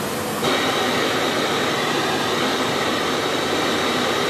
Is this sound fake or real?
real